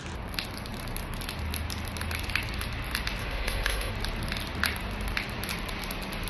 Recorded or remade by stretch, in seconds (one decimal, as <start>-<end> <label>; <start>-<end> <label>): 0.0-3.2 recorded; 3.2-3.9 remade; 3.9-6.3 recorded